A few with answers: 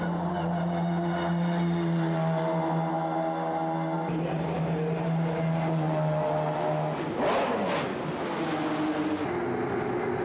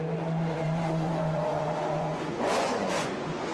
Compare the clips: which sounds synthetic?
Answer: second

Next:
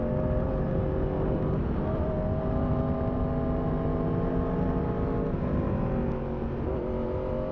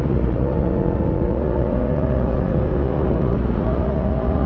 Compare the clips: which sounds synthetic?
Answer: second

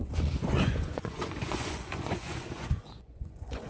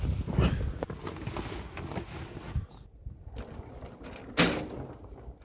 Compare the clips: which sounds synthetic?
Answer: first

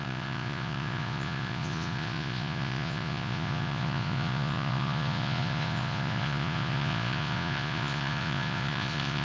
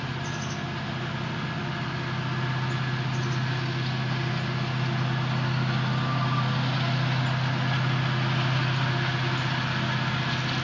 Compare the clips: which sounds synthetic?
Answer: first